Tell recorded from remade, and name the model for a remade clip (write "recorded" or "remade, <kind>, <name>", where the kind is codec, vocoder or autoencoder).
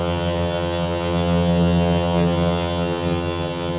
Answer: remade, vocoder, HiFi-GAN